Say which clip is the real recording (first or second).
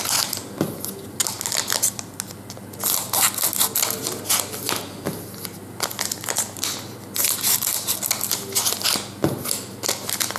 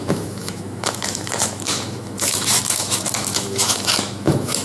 first